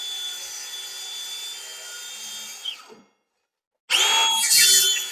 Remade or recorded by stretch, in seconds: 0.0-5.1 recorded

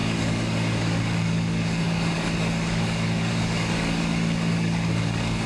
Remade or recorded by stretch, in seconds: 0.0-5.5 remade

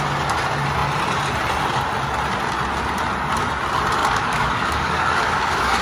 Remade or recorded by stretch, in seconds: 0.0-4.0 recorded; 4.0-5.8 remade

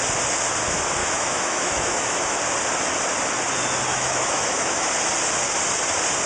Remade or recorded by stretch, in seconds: 0.0-1.0 recorded; 1.0-2.4 remade; 2.4-3.9 recorded; 3.9-4.9 remade; 4.9-6.3 recorded

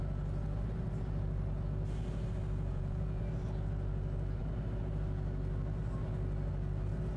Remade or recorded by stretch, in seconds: 0.0-2.7 recorded; 2.7-3.2 remade; 3.2-7.2 recorded

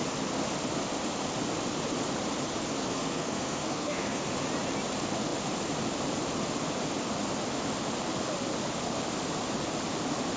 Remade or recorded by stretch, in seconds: 0.0-2.8 recorded; 2.8-4.2 remade; 4.2-10.4 recorded